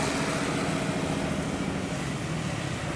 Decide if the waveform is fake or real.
real